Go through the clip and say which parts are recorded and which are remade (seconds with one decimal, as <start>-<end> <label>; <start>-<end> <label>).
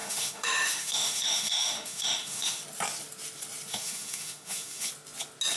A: 0.0-2.6 remade; 2.6-3.7 recorded; 3.7-4.9 remade; 4.9-5.6 recorded